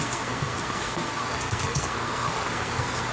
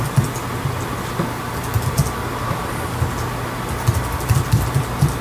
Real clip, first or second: second